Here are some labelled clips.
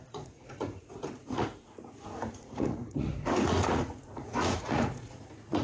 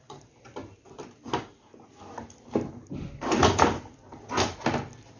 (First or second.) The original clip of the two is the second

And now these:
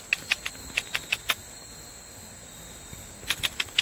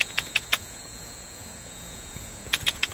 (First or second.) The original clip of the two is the first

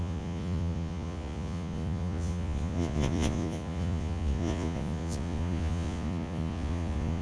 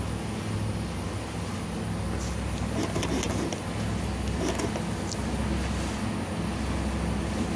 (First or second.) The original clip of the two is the second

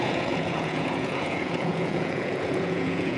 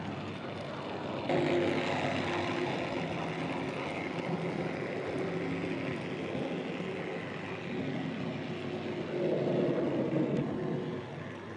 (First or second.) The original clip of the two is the second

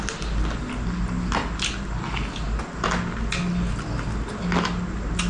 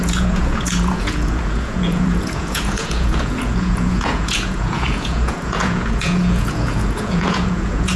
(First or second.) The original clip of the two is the first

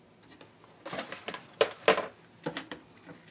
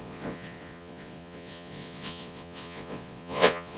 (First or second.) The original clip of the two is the first